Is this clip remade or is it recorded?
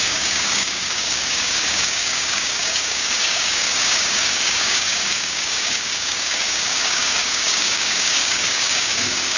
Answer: remade